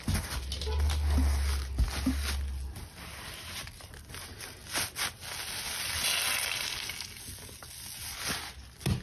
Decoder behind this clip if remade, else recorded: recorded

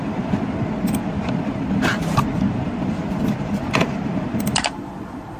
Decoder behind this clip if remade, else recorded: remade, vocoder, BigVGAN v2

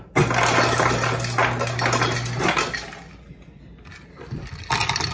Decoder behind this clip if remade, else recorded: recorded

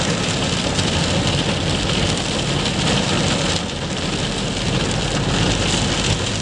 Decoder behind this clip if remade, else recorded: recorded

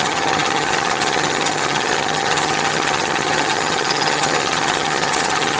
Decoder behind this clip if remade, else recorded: remade, vocoder, HiFi-GAN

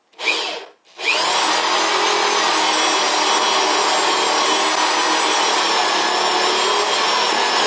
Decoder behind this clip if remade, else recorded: recorded